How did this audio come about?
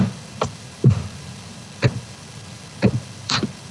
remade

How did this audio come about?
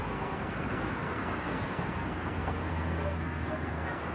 remade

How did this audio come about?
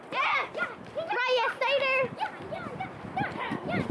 recorded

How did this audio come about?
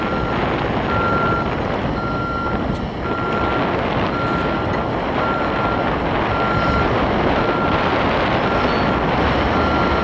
recorded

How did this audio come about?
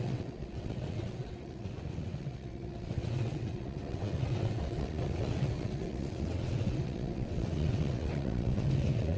remade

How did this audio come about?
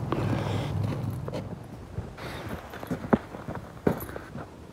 recorded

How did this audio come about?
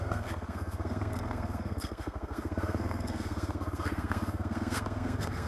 remade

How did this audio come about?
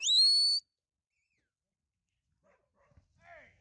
recorded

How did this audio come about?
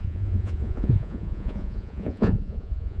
remade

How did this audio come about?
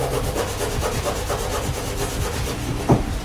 recorded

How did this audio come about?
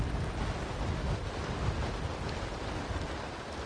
recorded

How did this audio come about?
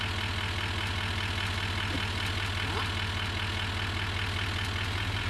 recorded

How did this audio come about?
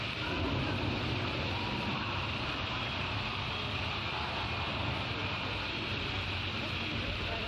recorded